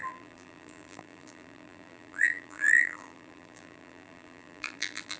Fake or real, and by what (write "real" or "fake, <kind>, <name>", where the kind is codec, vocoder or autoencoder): fake, vocoder, BigVGAN v2